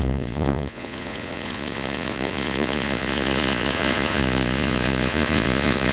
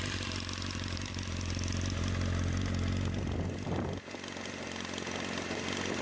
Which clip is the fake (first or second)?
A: first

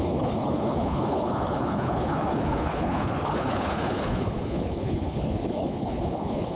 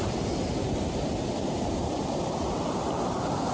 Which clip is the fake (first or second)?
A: first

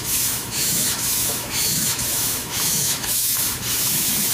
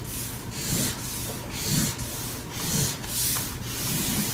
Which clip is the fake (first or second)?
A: first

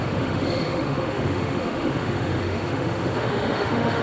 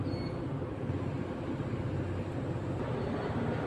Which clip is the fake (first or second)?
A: first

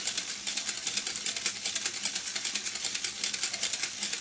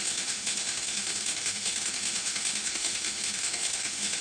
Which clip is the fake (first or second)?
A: second